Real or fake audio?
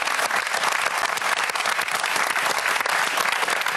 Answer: real